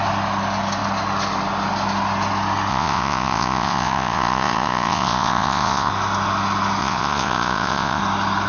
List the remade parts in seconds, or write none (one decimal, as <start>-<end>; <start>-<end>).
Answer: 2.7-5.9; 6.8-8.0